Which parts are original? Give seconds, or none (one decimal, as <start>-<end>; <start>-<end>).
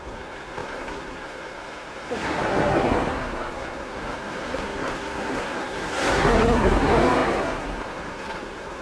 none